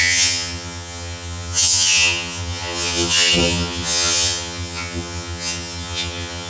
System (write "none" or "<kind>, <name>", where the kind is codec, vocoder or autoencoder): vocoder, HiFi-GAN